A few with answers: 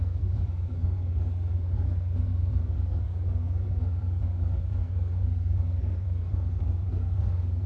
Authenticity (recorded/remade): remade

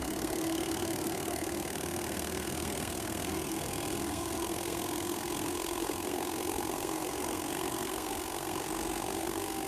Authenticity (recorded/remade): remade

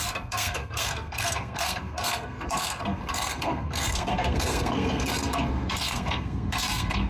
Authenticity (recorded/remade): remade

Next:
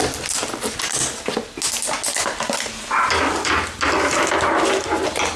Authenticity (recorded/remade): recorded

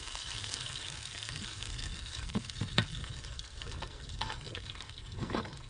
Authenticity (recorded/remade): remade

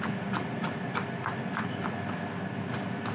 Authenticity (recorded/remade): recorded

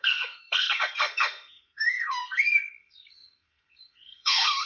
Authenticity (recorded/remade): remade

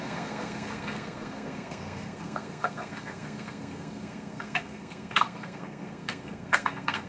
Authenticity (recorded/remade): remade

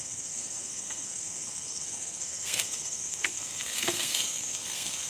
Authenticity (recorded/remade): remade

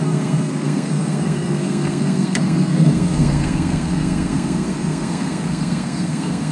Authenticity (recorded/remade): remade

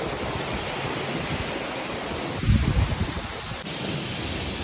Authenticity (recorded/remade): recorded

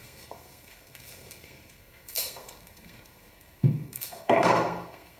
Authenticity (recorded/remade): remade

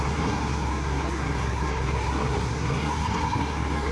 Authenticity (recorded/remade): remade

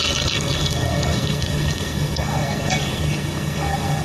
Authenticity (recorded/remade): remade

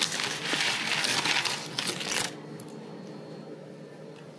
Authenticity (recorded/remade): recorded